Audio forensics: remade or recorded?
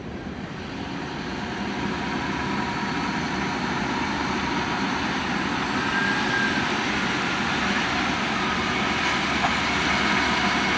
recorded